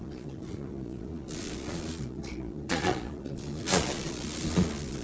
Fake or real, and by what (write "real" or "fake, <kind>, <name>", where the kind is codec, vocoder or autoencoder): fake, vocoder, Vocos